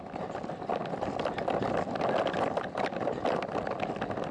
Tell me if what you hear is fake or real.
real